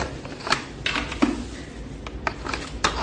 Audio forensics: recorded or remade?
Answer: recorded